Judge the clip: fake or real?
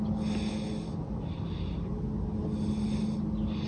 real